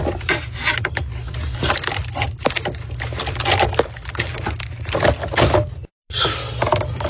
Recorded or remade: recorded